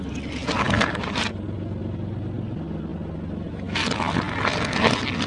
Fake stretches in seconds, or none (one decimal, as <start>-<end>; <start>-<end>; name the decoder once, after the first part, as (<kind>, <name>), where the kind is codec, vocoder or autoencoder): none